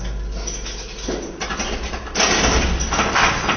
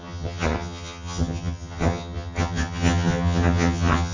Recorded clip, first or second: first